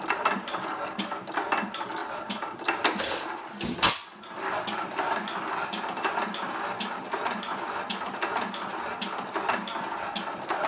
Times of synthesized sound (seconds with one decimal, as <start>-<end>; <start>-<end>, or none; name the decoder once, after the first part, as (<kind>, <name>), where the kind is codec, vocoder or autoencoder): none